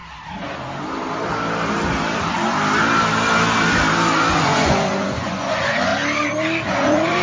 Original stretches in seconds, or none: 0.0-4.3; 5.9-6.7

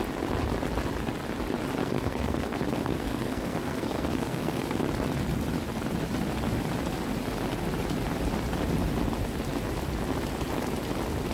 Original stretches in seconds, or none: 0.0-1.8; 4.8-11.3

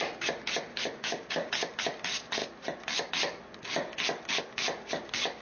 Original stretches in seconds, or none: 0.0-0.7; 1.5-5.4